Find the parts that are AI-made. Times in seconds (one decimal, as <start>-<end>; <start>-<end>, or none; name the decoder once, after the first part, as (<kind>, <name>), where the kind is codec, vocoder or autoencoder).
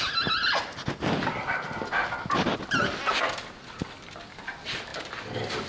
none